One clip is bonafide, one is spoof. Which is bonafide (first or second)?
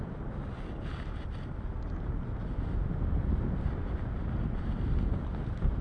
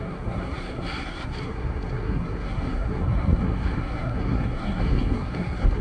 first